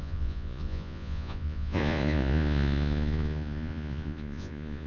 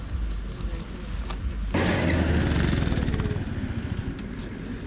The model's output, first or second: first